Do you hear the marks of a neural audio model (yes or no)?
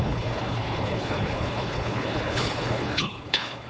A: yes